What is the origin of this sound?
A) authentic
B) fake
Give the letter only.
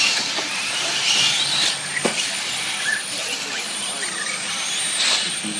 A